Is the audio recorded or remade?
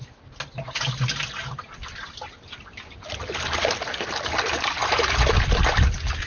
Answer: recorded